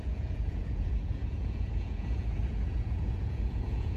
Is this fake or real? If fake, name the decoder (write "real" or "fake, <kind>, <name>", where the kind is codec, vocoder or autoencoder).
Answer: fake, vocoder, Vocos